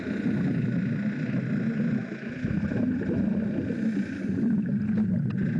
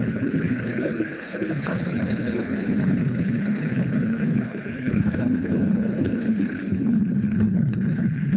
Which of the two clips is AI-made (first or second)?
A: second